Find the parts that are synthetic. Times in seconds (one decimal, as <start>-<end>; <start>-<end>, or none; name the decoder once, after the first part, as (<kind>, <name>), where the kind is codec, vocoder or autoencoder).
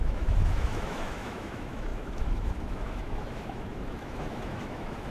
0.0-5.1 (autoencoder, DAC-VAE)